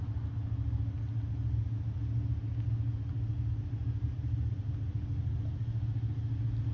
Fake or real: real